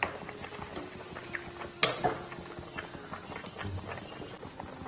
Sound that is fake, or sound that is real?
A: real